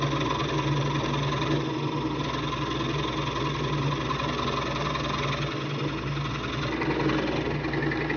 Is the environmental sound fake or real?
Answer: real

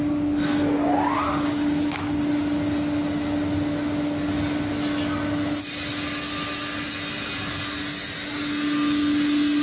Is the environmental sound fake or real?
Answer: real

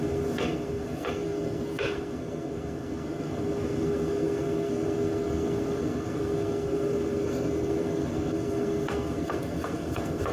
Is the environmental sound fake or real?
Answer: fake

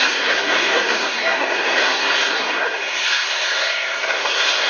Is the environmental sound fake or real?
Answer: fake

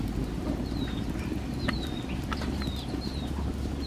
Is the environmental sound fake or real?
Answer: real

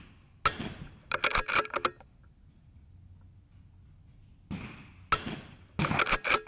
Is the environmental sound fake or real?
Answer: real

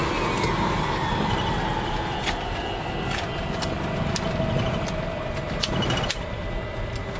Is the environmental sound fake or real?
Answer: real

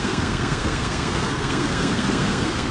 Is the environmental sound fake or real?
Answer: fake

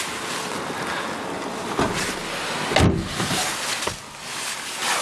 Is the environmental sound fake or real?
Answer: real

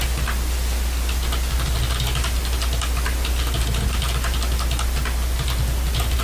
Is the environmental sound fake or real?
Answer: real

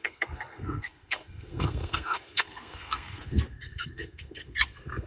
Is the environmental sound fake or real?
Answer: fake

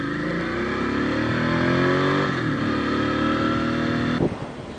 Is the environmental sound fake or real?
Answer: real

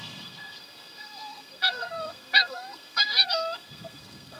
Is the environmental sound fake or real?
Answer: fake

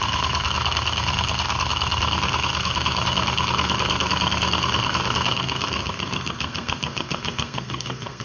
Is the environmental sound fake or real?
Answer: fake